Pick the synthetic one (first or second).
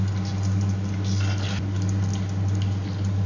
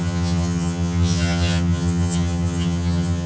second